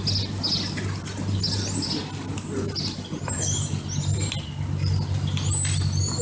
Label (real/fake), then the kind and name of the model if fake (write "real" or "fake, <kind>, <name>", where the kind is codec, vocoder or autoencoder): real